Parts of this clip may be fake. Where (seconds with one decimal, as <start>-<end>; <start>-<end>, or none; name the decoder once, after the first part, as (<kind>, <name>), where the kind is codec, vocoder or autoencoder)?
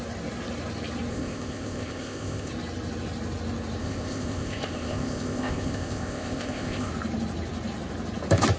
1.1-2.5 (codec, ZipCodec); 3.8-6.9